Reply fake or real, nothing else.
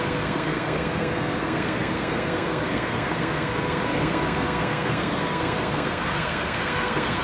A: fake